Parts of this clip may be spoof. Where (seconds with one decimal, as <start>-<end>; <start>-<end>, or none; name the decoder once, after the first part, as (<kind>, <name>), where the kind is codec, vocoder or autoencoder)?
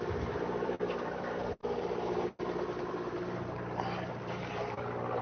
0.0-5.2 (vocoder, BigVGAN v2)